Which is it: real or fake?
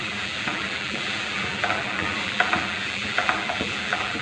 fake